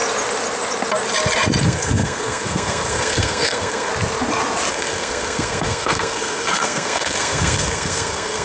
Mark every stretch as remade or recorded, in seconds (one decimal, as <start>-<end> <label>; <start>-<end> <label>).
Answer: 0.0-1.6 recorded; 1.6-3.9 remade; 3.9-4.7 recorded; 4.7-8.4 remade